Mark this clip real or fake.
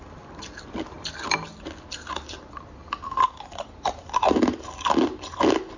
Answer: real